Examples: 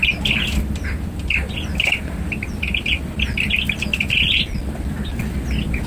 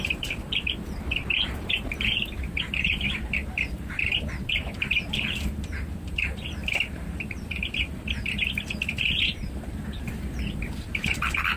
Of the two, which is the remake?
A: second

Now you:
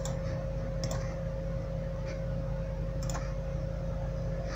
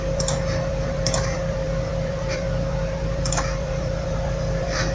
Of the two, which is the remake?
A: second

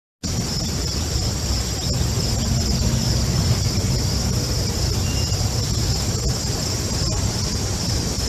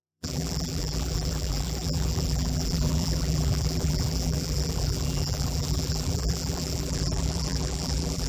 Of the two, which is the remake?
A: second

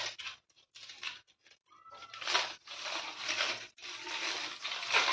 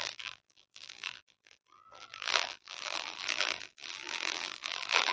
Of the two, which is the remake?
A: second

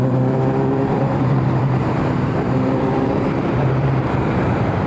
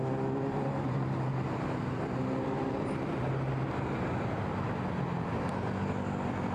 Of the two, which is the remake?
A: first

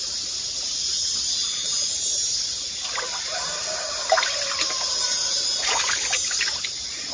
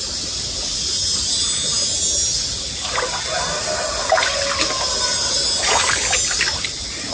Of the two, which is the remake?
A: first